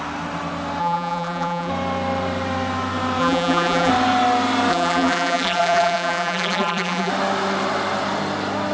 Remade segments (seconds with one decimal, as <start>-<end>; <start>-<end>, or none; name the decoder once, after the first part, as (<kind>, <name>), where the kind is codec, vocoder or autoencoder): 0.8-1.7 (vocoder, BigVGAN v2); 3.2-3.9; 4.7-7.1